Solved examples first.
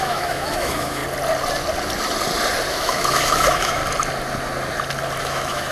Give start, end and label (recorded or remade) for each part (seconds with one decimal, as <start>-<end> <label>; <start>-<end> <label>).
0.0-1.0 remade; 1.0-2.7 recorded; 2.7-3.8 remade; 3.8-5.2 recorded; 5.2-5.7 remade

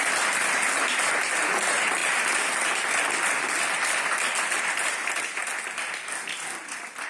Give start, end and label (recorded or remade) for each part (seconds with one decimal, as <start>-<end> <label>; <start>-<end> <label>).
0.0-7.1 recorded

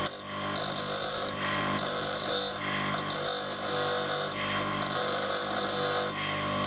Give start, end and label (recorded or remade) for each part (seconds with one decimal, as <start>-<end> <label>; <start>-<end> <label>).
0.0-1.0 recorded; 1.0-2.4 remade; 2.4-4.7 recorded; 4.7-5.3 remade; 5.3-6.7 recorded

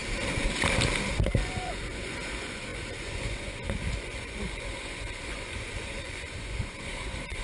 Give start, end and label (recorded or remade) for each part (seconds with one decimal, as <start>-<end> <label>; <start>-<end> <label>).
0.0-1.1 recorded; 1.1-7.4 remade